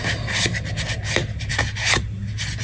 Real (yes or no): yes